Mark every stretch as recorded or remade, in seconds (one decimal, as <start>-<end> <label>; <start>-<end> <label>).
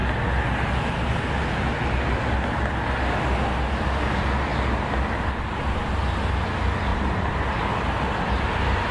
0.0-6.9 recorded; 6.9-8.4 remade; 8.4-8.9 recorded